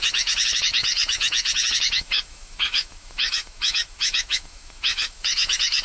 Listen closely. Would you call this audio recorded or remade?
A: remade